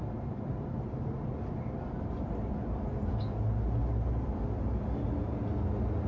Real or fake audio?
real